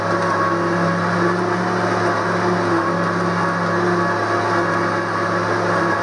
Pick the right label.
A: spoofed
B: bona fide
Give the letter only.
B